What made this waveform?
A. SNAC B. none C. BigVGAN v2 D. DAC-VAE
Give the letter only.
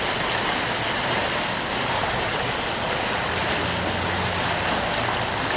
B